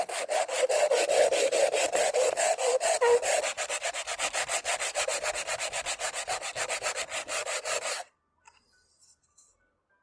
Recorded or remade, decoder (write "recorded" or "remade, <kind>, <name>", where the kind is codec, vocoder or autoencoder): recorded